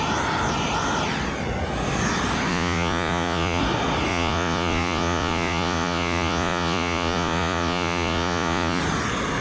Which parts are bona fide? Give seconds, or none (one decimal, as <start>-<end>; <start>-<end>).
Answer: 0.0-2.5; 3.6-4.1; 8.8-9.4